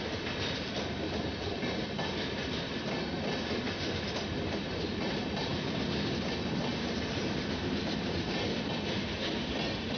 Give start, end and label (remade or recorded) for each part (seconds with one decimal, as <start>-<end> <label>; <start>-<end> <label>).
0.0-10.0 recorded